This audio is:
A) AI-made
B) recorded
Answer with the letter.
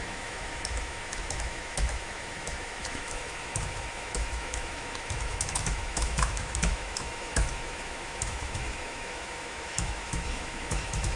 A